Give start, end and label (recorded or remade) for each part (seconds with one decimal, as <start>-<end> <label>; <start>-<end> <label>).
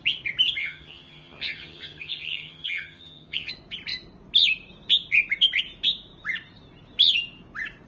0.0-0.6 recorded; 0.6-3.5 remade; 3.5-7.9 recorded